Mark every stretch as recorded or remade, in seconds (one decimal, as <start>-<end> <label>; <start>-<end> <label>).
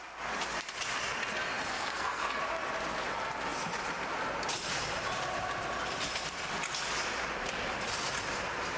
0.0-1.7 recorded; 1.7-2.4 remade; 2.4-8.8 recorded